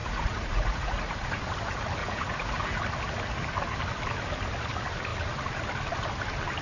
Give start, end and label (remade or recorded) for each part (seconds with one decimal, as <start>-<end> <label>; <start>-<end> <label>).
0.0-1.3 remade; 1.3-2.0 recorded; 2.0-2.8 remade; 2.8-6.6 recorded